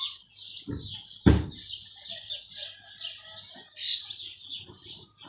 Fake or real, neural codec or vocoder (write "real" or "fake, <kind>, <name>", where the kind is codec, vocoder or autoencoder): real